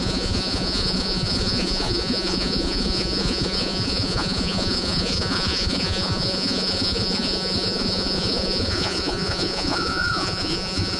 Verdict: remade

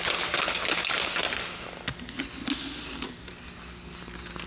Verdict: recorded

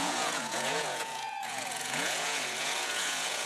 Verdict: remade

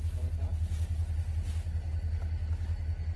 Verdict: recorded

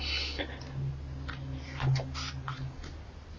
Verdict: recorded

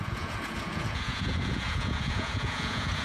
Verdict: remade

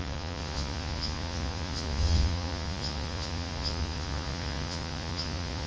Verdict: remade